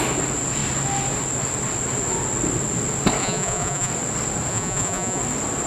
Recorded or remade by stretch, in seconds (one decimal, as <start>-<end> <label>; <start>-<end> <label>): 0.0-3.2 recorded; 3.2-3.9 remade; 3.9-4.5 recorded; 4.5-5.2 remade; 5.2-5.7 recorded